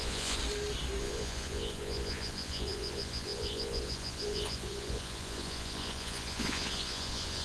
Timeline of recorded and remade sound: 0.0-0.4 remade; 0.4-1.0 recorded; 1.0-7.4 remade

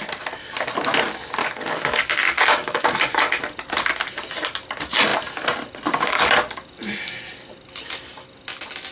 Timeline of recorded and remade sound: 0.0-1.4 recorded; 1.4-3.2 remade; 3.2-8.9 recorded

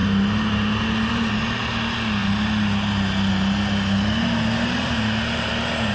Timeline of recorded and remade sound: 0.0-5.9 recorded

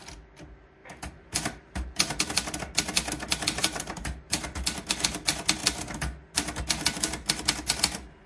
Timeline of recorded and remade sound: 0.0-0.8 recorded; 0.8-2.2 remade; 2.2-3.6 recorded; 3.6-4.4 remade; 4.4-8.3 recorded

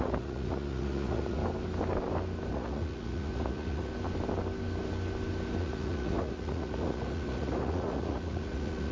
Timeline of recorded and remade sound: 0.0-1.4 remade; 1.4-2.5 recorded; 2.5-3.9 remade; 3.9-5.6 recorded; 5.6-8.9 remade

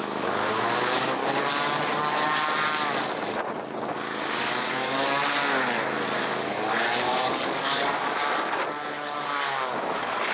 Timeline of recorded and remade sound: 0.0-1.2 remade; 1.2-4.3 recorded; 4.3-5.4 remade; 5.4-6.2 recorded; 6.2-8.2 remade; 8.2-9.8 recorded; 9.8-10.3 remade